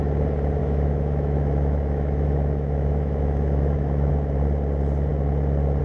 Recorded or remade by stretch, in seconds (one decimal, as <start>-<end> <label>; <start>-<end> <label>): 0.0-0.6 recorded; 0.6-4.1 remade; 4.1-5.8 recorded

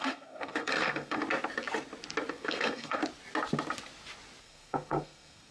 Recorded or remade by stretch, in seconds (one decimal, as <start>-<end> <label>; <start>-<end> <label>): 0.0-1.2 remade; 1.2-2.3 recorded; 2.3-3.0 remade; 3.0-4.4 recorded; 4.4-5.5 remade

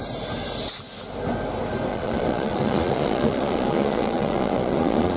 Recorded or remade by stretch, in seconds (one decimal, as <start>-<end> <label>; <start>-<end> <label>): 0.0-1.9 recorded; 1.9-5.2 remade

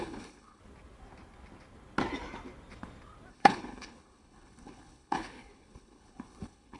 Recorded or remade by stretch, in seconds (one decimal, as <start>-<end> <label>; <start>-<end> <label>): 0.0-0.6 remade; 0.6-3.3 recorded; 3.3-6.8 remade